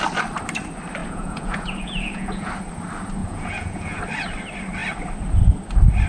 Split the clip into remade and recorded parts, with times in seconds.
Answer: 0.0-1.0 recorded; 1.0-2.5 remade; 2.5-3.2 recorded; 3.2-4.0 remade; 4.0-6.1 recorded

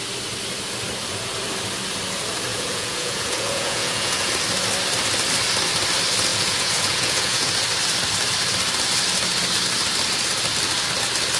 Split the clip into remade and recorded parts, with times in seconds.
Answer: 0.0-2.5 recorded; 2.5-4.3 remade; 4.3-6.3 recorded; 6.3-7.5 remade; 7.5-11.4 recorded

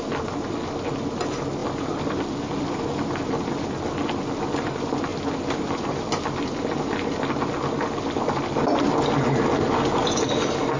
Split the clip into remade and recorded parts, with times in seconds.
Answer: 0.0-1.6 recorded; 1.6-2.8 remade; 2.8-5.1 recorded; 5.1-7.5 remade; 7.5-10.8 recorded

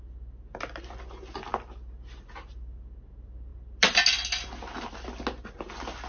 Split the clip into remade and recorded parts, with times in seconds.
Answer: 0.0-6.1 recorded

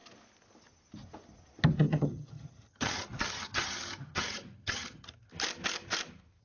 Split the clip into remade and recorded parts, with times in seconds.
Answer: 0.0-1.8 recorded; 1.8-5.3 remade; 5.3-6.4 recorded

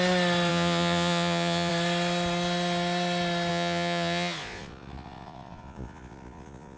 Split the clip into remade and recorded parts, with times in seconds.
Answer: 0.0-0.5 recorded; 0.5-1.7 remade; 1.7-3.5 recorded; 3.5-6.8 remade